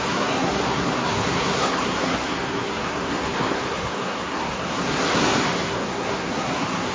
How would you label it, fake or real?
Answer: fake